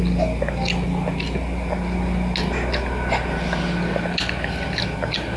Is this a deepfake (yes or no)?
no